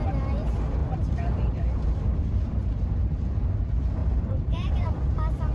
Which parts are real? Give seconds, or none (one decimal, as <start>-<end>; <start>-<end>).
0.0-0.8; 2.9-4.0; 5.0-5.5